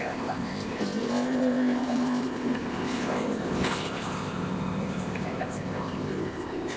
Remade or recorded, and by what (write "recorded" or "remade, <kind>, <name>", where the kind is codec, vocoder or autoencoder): remade, codec, ZipCodec